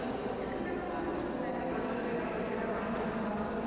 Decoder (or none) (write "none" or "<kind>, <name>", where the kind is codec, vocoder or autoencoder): none